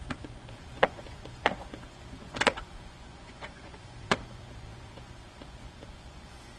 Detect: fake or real fake